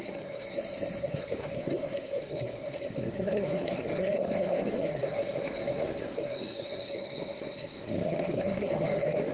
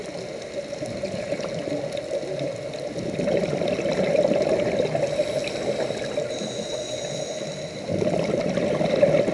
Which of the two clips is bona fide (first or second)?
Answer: second